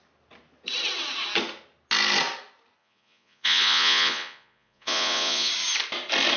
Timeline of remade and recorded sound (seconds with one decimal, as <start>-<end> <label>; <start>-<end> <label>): 0.0-2.8 recorded; 2.8-5.5 remade; 5.5-6.4 recorded